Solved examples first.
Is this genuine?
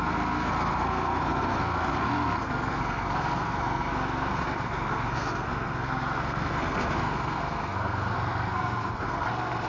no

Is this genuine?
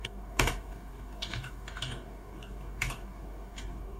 no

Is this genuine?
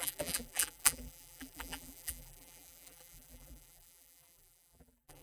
no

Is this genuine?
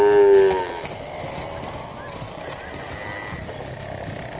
yes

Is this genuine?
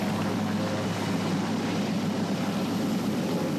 yes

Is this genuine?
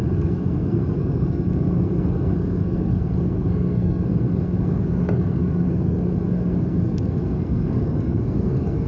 no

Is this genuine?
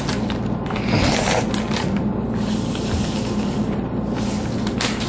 yes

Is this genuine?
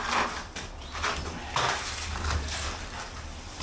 yes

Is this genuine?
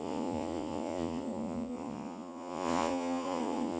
no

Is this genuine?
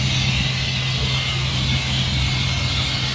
yes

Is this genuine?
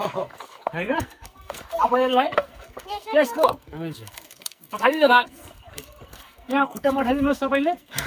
no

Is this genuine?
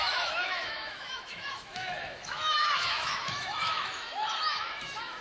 no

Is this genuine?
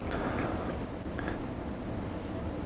yes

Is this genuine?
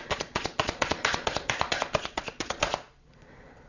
no